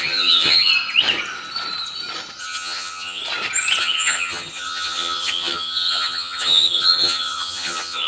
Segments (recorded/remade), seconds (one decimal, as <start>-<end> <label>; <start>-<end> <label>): 0.0-0.7 remade; 0.7-2.4 recorded; 2.4-3.2 remade; 3.2-3.8 recorded; 3.8-8.1 remade